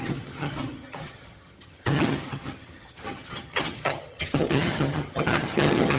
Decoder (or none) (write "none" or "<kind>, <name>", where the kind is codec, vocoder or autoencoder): vocoder, HiFi-GAN